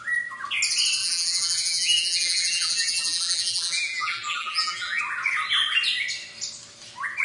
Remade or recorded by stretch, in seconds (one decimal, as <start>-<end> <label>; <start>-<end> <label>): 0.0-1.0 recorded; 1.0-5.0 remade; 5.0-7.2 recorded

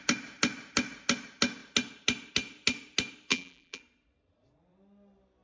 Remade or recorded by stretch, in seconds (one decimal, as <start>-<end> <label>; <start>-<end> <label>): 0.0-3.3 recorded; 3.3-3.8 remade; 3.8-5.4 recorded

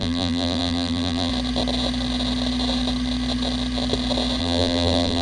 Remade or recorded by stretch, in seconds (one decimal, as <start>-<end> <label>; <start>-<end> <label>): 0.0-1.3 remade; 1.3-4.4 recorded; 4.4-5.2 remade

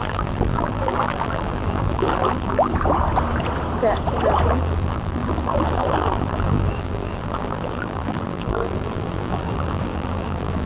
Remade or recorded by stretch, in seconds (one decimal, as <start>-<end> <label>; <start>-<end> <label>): 0.0-2.7 remade; 2.7-4.5 recorded; 4.5-10.7 remade

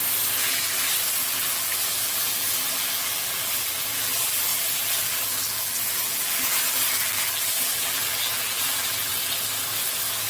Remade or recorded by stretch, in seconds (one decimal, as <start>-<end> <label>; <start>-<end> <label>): 0.0-1.2 recorded; 1.2-9.1 remade; 9.1-10.3 recorded

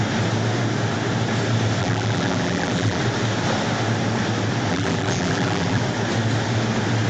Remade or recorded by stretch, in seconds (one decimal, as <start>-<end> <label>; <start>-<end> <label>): 0.0-1.8 recorded; 1.8-3.0 remade; 3.0-4.7 recorded; 4.7-5.8 remade; 5.8-7.1 recorded

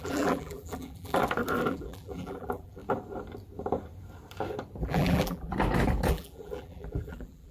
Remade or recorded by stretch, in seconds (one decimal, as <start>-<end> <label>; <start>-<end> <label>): 0.0-1.2 remade; 1.2-1.7 recorded; 1.7-2.8 remade; 2.8-4.8 recorded; 4.8-5.5 remade; 5.5-6.1 recorded; 6.1-7.5 remade